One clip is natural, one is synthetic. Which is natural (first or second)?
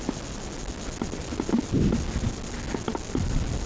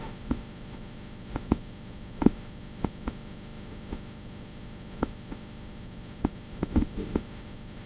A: first